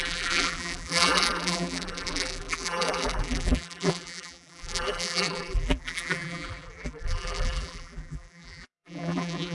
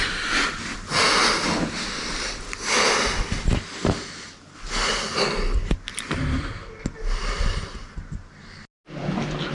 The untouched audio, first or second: second